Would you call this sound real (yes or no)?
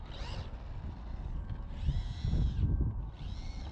yes